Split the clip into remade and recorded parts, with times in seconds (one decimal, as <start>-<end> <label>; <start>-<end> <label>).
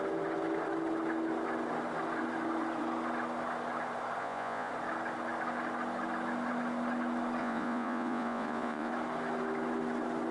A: 0.0-4.2 recorded; 4.2-4.7 remade; 4.7-7.4 recorded; 7.4-8.9 remade; 8.9-10.3 recorded